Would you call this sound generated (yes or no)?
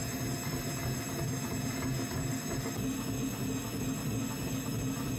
no